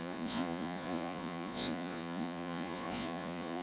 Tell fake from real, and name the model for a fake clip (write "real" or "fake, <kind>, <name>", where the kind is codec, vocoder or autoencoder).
fake, vocoder, Vocos